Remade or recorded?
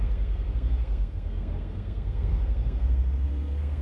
remade